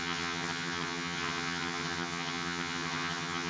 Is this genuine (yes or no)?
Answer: no